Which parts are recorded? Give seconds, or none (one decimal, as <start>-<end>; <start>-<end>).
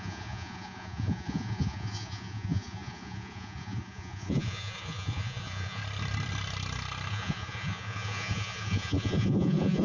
5.8-7.1